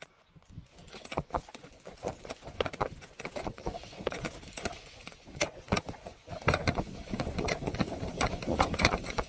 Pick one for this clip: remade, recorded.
remade